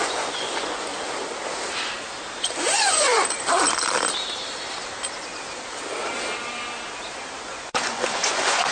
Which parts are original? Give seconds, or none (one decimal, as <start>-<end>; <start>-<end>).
0.9-2.4; 3.1-7.4